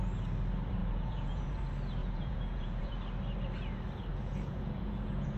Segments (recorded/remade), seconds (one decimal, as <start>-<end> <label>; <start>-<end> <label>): 0.0-0.8 recorded; 0.8-1.6 remade; 1.6-2.0 recorded; 2.0-2.9 remade; 2.9-4.1 recorded; 4.1-5.4 remade